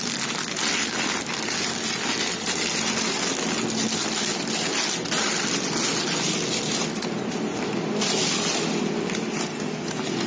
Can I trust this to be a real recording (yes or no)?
yes